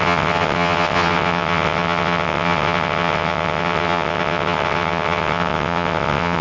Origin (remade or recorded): remade